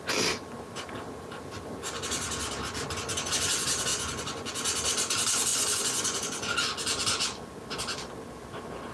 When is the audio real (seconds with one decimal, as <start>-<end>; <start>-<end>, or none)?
0.0-3.9; 4.5-5.5; 6.5-8.9